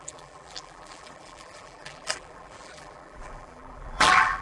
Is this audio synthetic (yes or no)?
yes